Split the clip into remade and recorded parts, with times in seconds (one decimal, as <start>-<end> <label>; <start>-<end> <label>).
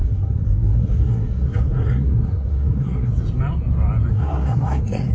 0.0-3.1 remade; 3.1-4.1 recorded; 4.1-5.1 remade